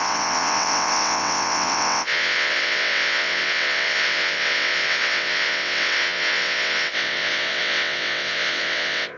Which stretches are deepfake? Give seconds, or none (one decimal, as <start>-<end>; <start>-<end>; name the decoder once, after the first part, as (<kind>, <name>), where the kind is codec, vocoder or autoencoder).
0.0-9.2 (vocoder, WaveNeXt)